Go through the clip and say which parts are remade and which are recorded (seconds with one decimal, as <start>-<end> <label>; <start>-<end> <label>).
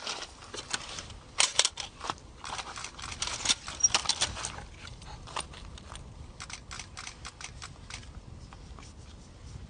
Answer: 0.0-1.5 recorded; 1.5-6.0 remade; 6.0-9.7 recorded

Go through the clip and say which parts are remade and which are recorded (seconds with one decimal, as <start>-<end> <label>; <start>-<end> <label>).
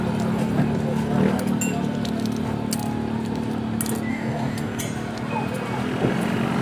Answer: 0.0-4.1 recorded; 4.1-4.8 remade; 4.8-6.6 recorded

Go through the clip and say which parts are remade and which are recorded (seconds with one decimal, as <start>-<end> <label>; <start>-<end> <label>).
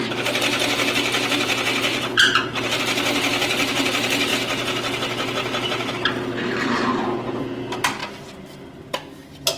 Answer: 0.0-1.9 recorded; 1.9-2.8 remade; 2.8-9.6 recorded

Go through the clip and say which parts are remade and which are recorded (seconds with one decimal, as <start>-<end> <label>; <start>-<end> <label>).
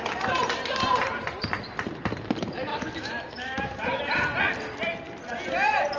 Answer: 0.0-2.7 recorded; 2.7-4.0 remade; 4.0-6.0 recorded